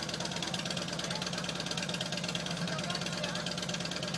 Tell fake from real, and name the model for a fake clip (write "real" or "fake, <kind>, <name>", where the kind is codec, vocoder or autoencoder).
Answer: real